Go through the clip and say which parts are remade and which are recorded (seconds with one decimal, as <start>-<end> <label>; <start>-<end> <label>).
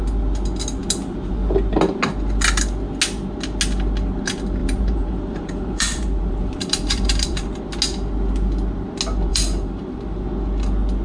0.0-4.6 recorded; 4.6-7.6 remade; 7.6-9.3 recorded; 9.3-10.2 remade; 10.2-11.0 recorded